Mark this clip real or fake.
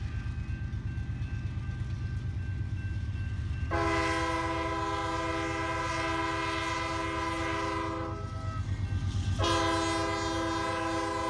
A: real